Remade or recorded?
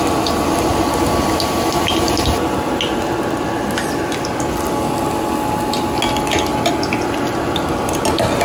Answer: recorded